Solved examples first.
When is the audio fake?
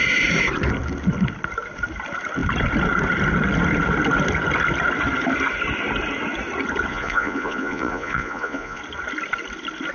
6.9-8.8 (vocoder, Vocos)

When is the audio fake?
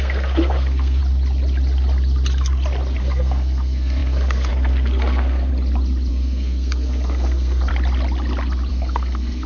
0.0-1.0 (codec, SNAC); 3.0-5.5; 6.1-7.7; 8.7-9.5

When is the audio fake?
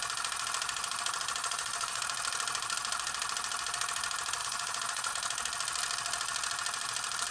1.4-2.0 (vocoder, Vocos); 4.4-5.1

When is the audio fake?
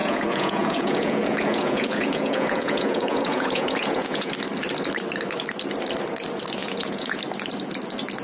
0.0-4.3 (vocoder, Vocos); 6.6-7.2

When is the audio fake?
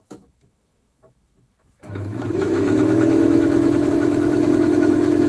0.0-5.3 (autoencoder, DAC-VAE)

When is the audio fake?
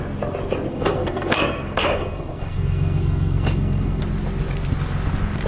0.7-4.0 (codec, SNAC)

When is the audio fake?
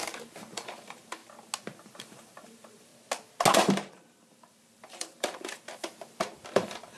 0.0-1.2 (vocoder, BigVGAN v2); 1.8-2.9; 3.5-5.5; 6.5-7.0